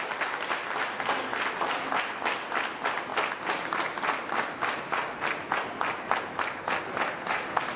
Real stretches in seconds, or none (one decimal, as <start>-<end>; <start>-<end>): 0.0-7.8